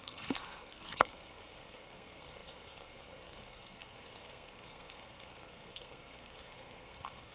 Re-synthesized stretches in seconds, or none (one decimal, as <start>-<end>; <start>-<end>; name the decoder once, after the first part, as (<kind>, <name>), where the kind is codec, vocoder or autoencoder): 0.0-7.3 (codec, SNAC)